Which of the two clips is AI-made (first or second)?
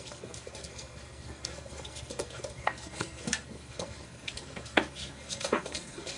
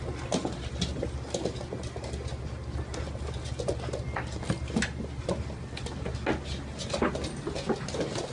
first